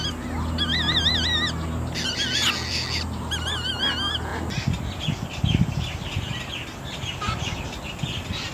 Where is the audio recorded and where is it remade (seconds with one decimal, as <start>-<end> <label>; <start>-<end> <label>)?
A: 0.0-8.5 recorded